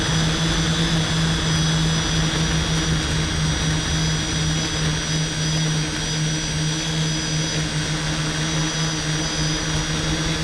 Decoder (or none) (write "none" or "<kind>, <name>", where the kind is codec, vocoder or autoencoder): none